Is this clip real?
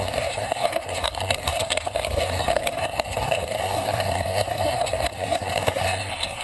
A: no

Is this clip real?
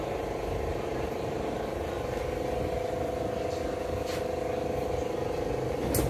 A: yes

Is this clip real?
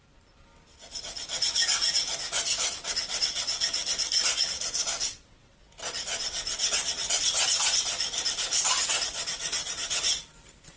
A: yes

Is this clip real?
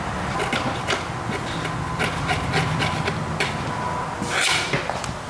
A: yes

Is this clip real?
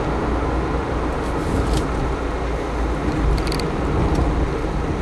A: yes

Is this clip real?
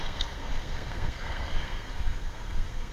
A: no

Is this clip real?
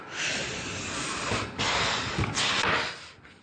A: yes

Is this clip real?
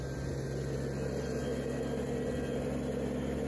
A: yes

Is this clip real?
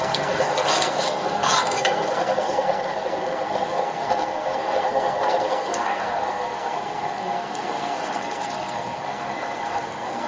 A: no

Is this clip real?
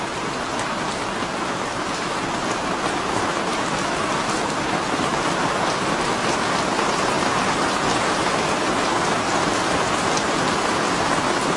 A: yes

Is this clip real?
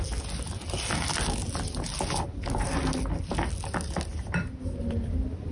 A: yes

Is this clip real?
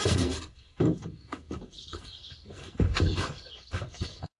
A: no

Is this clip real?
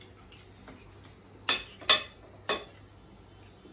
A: yes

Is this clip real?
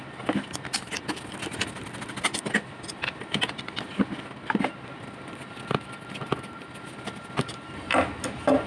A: yes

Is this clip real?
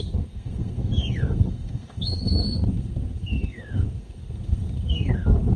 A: no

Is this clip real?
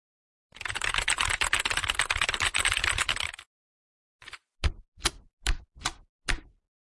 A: yes